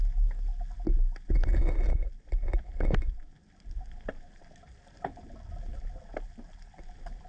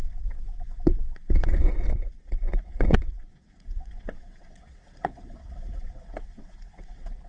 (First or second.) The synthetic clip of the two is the second